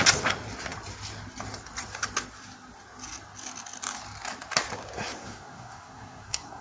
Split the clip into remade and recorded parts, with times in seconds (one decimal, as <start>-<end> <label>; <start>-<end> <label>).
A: 0.0-5.2 recorded; 5.2-6.6 remade